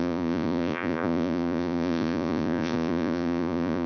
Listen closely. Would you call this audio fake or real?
fake